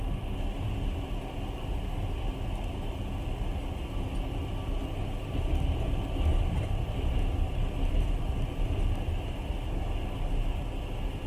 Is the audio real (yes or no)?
yes